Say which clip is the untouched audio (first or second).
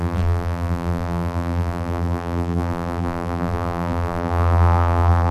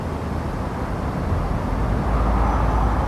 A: second